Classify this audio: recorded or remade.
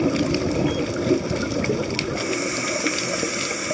recorded